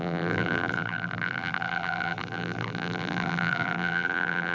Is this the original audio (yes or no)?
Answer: no